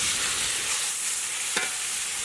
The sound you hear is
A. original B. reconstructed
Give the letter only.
A